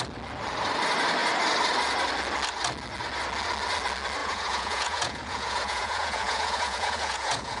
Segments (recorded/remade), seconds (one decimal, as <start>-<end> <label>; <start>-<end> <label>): 0.0-4.2 recorded; 4.2-7.6 remade